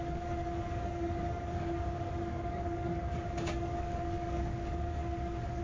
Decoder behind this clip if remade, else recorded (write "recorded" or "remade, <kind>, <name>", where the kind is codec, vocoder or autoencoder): remade, codec, DAC